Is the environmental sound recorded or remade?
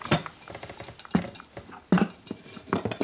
recorded